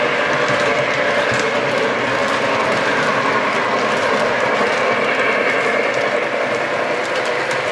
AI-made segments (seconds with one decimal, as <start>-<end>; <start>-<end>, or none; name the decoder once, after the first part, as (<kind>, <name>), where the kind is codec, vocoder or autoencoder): none